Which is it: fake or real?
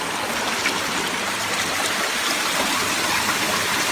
real